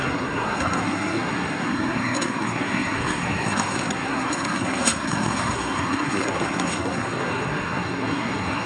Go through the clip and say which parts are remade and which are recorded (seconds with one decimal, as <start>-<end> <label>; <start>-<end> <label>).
0.0-8.7 remade